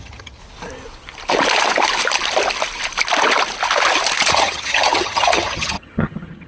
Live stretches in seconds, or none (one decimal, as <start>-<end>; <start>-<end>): 0.4-4.3